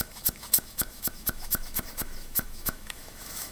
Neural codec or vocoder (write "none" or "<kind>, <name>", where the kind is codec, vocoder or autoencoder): autoencoder, DAC-VAE